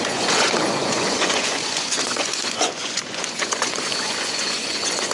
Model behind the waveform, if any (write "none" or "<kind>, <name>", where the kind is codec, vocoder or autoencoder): vocoder, Vocos